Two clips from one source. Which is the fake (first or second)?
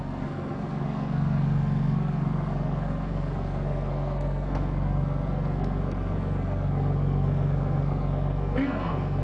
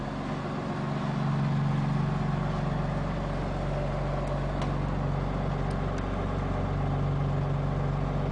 first